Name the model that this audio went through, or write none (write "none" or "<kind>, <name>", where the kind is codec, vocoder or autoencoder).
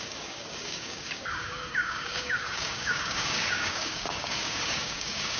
codec, DAC